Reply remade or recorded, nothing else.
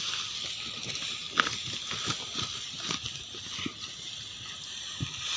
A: recorded